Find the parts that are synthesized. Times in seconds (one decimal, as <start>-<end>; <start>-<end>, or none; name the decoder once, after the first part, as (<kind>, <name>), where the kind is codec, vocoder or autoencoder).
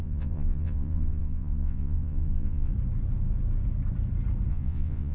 0.0-2.7 (vocoder, Vocos); 4.5-5.1